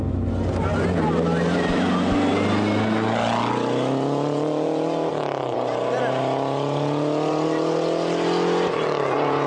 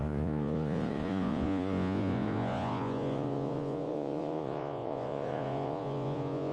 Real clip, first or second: first